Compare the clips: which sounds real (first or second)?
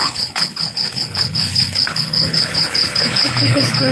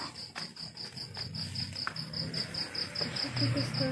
second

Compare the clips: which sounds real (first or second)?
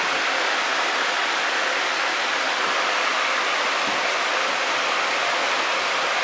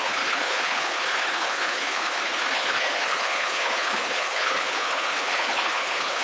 first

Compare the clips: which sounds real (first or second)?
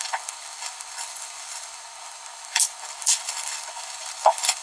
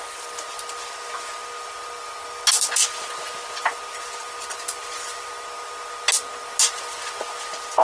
second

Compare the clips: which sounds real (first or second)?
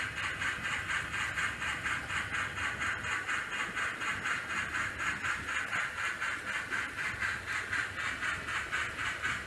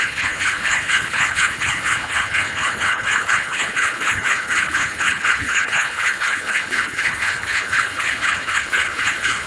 first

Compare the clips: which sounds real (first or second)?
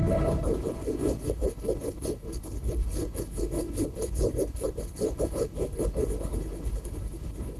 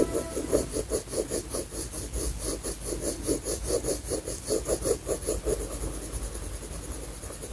second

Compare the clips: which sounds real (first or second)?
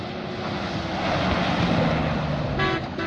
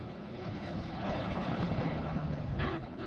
first